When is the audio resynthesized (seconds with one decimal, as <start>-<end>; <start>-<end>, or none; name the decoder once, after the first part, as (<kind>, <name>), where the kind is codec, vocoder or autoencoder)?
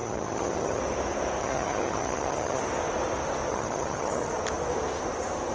0.0-0.8 (vocoder, HiFi-GAN); 1.4-2.6; 3.5-4.3